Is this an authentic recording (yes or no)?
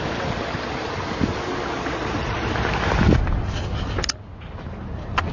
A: yes